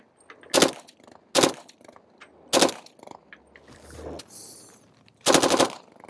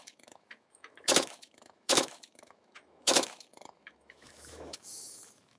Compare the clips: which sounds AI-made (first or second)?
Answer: second